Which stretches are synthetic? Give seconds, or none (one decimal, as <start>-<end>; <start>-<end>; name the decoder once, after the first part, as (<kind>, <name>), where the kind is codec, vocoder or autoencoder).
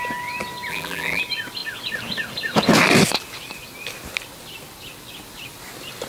0.7-1.2 (vocoder, BigVGAN v2)